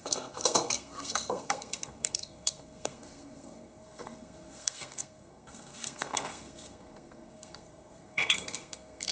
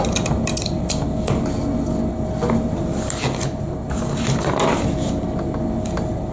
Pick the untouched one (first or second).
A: second